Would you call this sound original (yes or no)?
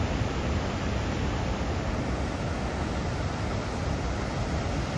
no